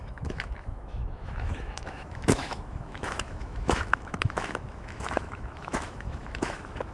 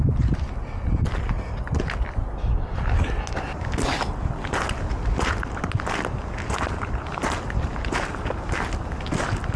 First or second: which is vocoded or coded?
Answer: first